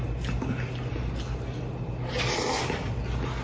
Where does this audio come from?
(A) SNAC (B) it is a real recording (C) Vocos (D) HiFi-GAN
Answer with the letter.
B